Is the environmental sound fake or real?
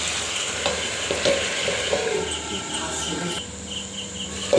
fake